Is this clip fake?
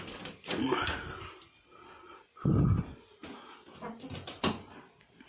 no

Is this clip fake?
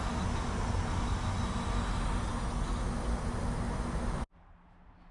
no